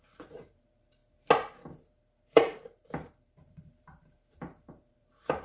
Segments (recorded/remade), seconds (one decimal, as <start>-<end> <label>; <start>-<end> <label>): 0.0-1.0 remade; 1.0-1.8 recorded; 1.8-5.4 remade